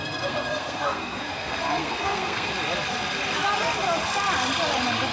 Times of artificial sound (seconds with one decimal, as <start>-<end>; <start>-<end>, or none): 0.0-2.5